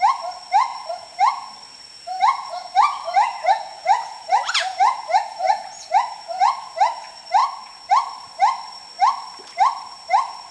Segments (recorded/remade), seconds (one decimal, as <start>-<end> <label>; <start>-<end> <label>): 0.0-0.7 recorded; 0.7-1.5 remade; 1.5-1.9 recorded; 1.9-6.5 remade; 6.5-7.4 recorded; 7.4-7.9 remade; 7.9-10.5 recorded